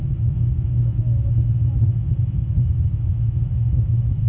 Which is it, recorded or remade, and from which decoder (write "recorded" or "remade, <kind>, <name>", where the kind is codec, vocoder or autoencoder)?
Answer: remade, autoencoder, DAC-VAE